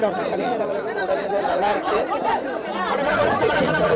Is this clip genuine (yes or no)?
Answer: no